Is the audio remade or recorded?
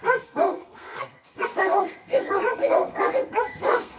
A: remade